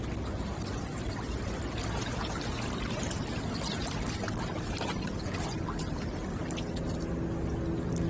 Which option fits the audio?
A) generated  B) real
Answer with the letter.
B